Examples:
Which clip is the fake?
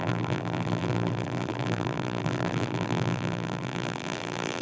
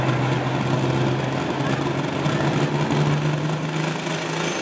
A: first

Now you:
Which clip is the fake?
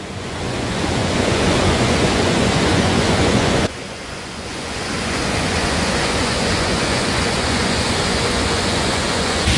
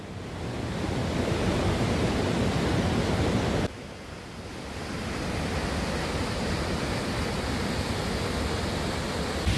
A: first